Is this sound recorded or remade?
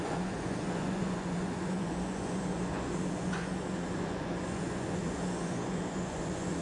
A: remade